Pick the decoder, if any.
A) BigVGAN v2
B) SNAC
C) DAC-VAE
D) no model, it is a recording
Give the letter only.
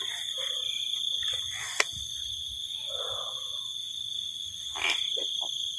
D